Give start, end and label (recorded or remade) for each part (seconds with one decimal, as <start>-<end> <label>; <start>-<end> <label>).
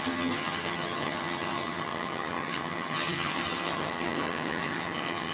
0.0-5.3 remade